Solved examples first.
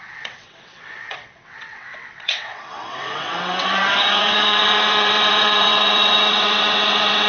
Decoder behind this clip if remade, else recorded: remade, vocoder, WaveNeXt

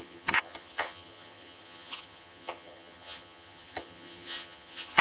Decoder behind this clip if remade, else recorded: remade, vocoder, HiFi-GAN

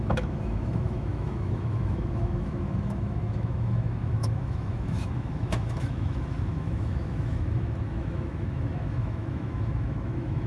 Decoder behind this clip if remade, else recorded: remade, autoencoder, DAC-VAE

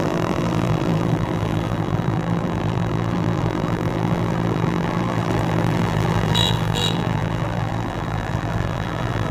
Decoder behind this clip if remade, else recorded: remade, vocoder, BigVGAN v2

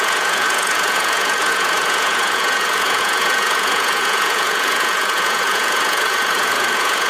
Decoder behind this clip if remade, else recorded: remade, vocoder, Vocos